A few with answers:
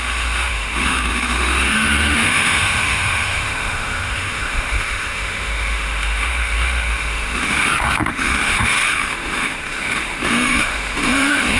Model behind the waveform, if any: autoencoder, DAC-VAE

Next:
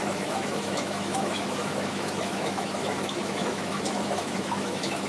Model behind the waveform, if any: autoencoder, DAC-VAE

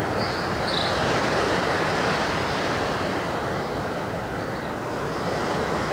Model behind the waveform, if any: none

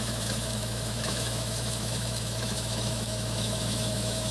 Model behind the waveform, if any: autoencoder, DAC-VAE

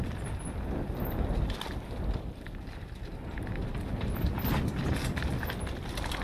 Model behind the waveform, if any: none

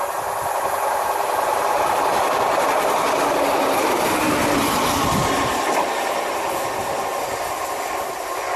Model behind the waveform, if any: none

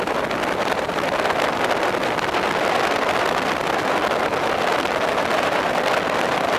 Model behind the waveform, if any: none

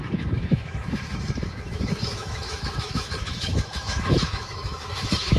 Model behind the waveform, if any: autoencoder, DAC-VAE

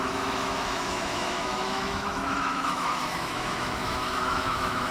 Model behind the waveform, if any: autoencoder, DAC-VAE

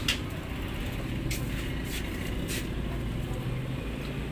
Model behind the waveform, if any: none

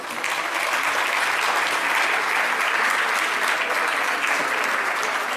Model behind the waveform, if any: none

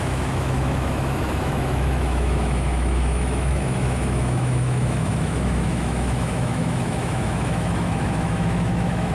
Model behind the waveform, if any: autoencoder, DAC-VAE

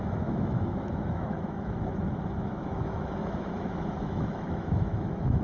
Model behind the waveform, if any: autoencoder, DAC-VAE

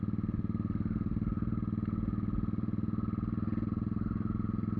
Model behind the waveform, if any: none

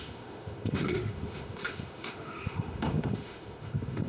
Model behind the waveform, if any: autoencoder, DAC-VAE